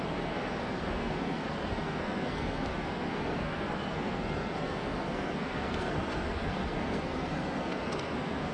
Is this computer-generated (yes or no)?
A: yes